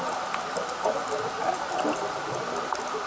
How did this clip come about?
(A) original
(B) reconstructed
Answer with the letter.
A